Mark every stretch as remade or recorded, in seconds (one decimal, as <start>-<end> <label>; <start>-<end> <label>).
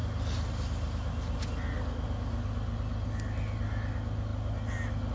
0.0-5.1 recorded